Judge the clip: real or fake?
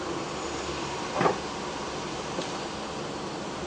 real